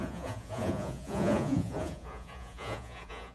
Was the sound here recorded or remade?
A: remade